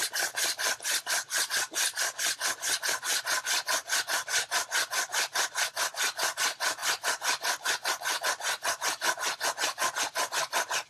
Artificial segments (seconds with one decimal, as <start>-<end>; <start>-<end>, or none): none